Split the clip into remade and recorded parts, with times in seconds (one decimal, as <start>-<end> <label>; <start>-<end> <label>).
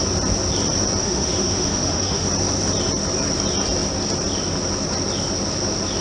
0.0-1.0 recorded; 1.0-2.3 remade; 2.3-6.0 recorded